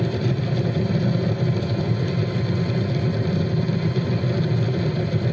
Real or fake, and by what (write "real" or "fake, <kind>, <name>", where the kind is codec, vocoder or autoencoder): real